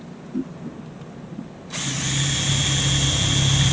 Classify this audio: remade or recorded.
recorded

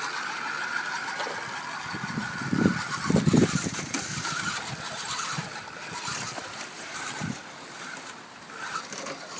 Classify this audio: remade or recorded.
recorded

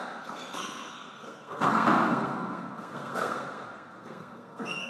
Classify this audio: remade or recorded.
remade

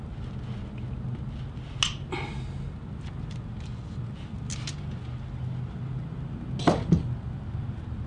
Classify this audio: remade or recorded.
recorded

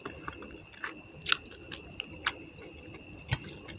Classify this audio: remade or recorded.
recorded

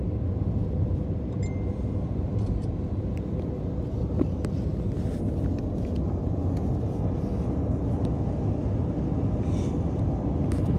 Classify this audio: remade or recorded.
recorded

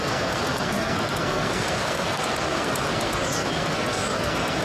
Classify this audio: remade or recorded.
remade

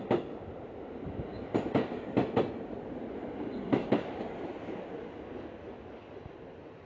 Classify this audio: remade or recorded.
recorded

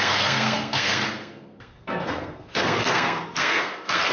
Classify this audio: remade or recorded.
remade